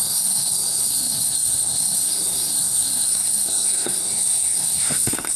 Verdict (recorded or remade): remade